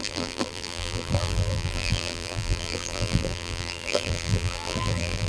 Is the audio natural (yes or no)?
no